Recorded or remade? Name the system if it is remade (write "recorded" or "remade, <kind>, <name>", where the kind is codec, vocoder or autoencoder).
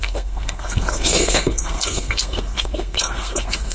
remade, codec, SNAC